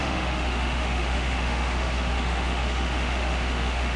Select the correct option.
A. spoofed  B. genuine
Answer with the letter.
A